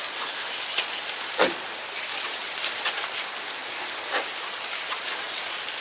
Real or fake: real